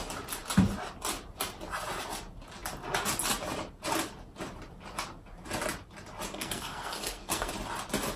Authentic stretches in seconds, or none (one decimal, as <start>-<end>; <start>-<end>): 0.0-6.3; 7.5-8.2